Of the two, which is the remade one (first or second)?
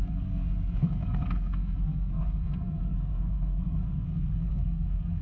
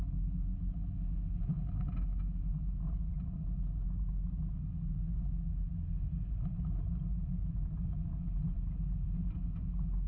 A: first